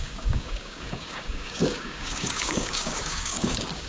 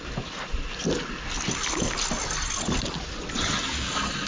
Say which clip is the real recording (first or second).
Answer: second